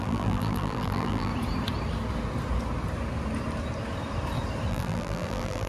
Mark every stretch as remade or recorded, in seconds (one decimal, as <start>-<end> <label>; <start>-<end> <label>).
0.0-1.3 remade; 1.3-4.7 recorded; 4.7-5.7 remade

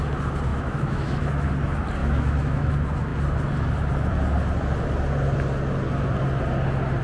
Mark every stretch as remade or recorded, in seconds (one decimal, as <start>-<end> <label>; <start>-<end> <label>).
0.0-0.5 recorded; 0.5-1.5 remade; 1.5-2.0 recorded; 2.0-2.7 remade; 2.7-7.0 recorded